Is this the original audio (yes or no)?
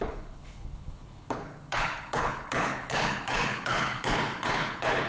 no